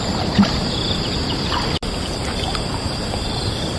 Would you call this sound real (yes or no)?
no